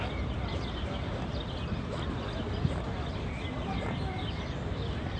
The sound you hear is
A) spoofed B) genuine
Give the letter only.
B